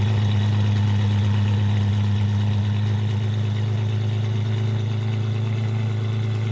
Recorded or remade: recorded